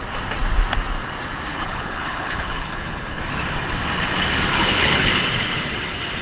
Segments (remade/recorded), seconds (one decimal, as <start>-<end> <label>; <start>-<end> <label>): 0.0-1.5 recorded; 1.5-3.2 remade; 3.2-4.5 recorded; 4.5-5.1 remade; 5.1-6.2 recorded